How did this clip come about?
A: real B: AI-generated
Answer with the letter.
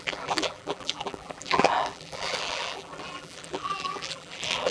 B